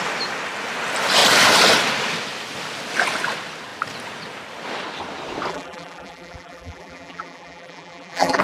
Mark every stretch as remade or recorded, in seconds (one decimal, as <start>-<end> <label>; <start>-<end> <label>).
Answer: 0.0-5.5 recorded; 5.5-8.4 remade